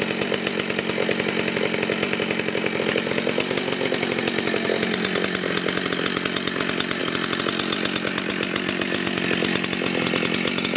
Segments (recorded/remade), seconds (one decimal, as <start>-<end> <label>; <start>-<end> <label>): 0.0-10.8 recorded